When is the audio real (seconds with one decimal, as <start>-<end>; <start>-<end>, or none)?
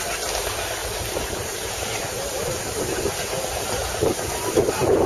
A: 0.0-5.1